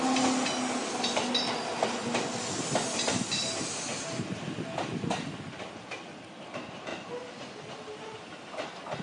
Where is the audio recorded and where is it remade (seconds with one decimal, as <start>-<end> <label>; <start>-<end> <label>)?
0.0-9.0 recorded